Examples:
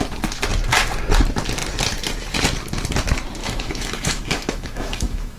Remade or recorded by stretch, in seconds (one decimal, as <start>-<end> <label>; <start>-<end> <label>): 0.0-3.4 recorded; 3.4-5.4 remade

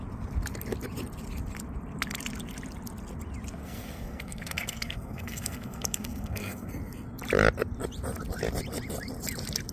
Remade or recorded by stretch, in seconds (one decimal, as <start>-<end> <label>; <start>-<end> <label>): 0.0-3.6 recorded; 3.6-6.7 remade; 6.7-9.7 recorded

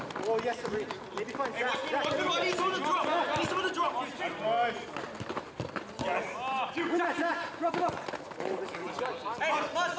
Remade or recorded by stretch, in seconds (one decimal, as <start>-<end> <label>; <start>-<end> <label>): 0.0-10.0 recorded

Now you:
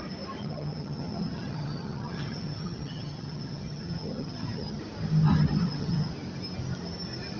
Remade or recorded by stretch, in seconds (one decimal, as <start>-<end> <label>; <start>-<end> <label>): 0.0-0.4 recorded; 0.4-4.8 remade; 4.8-5.6 recorded; 5.6-6.1 remade; 6.1-7.4 recorded

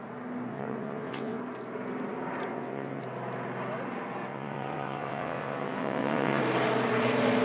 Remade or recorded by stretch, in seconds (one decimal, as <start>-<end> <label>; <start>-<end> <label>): 0.0-0.5 recorded; 0.5-1.4 remade; 1.4-2.5 recorded; 2.5-3.0 remade; 3.0-4.3 recorded; 4.3-6.4 remade; 6.4-7.4 recorded